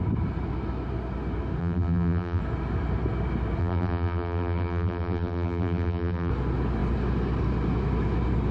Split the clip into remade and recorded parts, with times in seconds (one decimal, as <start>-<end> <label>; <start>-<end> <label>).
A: 0.0-1.6 recorded; 1.6-2.4 remade; 2.4-3.6 recorded; 3.6-6.3 remade; 6.3-8.5 recorded